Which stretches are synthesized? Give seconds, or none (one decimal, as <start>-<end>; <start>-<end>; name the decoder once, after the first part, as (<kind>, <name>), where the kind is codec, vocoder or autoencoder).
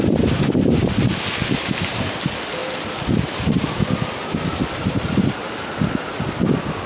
none